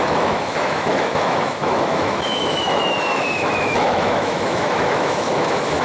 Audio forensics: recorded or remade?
remade